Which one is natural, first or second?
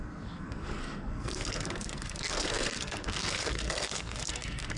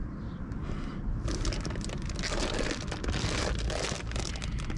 second